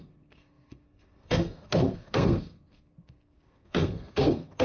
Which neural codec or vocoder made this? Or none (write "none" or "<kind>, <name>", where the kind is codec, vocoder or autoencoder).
codec, SNAC